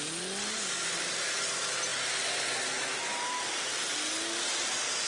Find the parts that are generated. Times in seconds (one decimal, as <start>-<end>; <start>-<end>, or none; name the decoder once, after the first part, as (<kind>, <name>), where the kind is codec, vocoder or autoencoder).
none